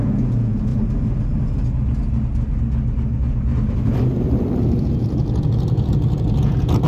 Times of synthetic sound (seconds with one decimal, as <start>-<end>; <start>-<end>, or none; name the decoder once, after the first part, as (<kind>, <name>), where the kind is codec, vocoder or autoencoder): 0.0-0.7 (vocoder, Vocos); 4.8-6.9